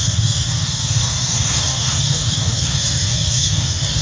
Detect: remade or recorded remade